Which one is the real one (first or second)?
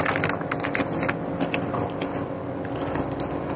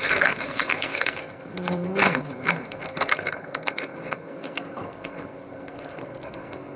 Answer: first